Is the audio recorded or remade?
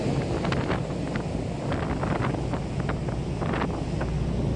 recorded